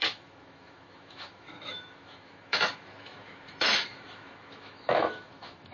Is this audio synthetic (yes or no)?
yes